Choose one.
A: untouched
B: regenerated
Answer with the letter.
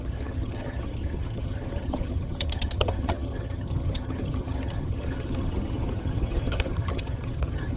B